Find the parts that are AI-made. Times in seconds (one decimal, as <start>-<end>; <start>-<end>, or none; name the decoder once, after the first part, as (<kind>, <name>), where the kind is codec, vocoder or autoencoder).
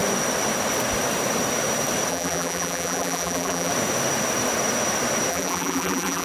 2.1-3.7 (vocoder, BigVGAN v2); 5.3-6.2